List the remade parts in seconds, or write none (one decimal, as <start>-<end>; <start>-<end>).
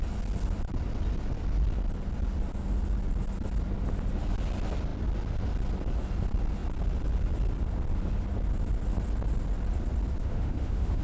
10.2-11.0